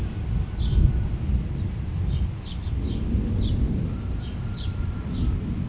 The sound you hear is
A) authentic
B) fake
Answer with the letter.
A